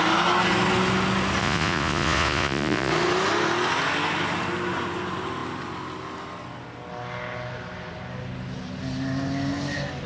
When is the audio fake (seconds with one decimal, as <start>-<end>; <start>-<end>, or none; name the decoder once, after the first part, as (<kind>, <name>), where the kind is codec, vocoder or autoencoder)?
1.4-2.9 (vocoder, Vocos)